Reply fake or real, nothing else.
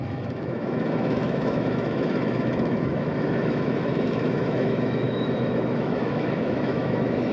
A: fake